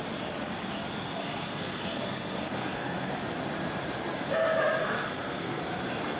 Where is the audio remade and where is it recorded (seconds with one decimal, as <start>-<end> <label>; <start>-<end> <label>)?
0.0-1.2 recorded; 1.2-3.1 remade; 3.1-4.8 recorded; 4.8-5.6 remade; 5.6-6.2 recorded